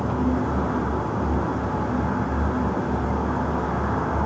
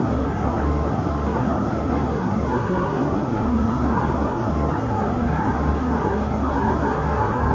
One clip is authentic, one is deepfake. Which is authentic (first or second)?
first